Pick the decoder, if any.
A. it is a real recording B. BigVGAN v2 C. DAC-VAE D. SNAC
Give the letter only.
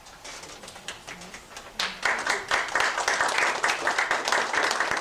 A